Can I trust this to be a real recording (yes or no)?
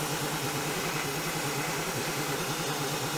yes